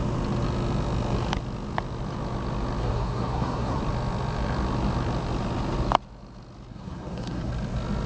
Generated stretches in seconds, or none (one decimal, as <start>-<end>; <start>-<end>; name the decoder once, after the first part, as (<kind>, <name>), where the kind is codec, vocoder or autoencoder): 2.8-3.8 (codec, SNAC); 6.7-7.5